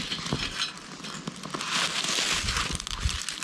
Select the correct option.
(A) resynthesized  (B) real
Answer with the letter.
B